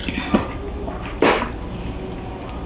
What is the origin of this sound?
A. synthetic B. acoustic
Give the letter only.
B